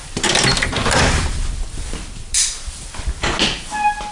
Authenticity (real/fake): real